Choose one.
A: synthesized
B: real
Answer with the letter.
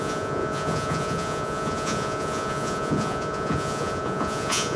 A